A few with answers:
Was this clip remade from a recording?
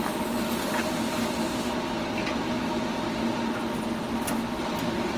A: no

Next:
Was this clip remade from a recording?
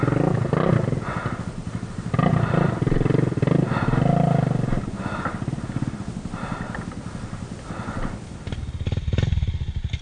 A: no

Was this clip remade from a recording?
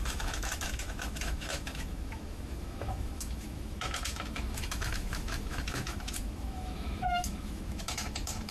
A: yes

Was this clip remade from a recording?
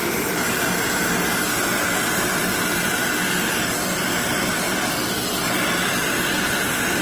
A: no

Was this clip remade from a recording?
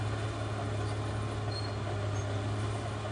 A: no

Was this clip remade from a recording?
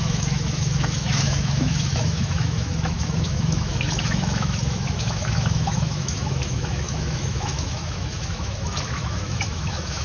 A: yes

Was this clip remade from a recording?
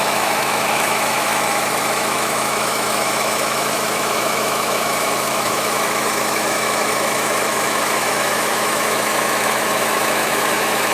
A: yes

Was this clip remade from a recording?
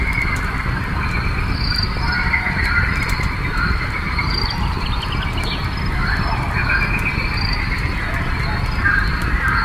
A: no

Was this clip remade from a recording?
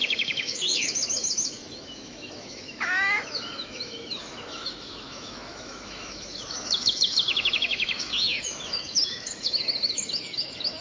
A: yes